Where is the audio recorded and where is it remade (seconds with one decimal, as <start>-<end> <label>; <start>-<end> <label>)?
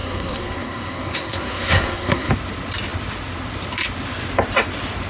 0.0-2.3 remade; 2.3-5.1 recorded